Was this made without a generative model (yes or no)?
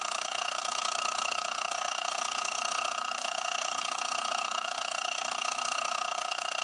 no